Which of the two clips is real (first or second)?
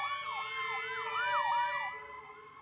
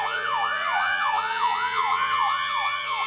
first